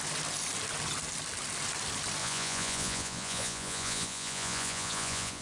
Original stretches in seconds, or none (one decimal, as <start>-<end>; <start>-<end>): 0.0-2.2